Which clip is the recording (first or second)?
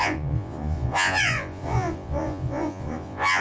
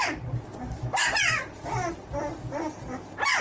second